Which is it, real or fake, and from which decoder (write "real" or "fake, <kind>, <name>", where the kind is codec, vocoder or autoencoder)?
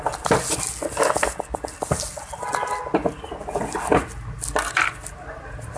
real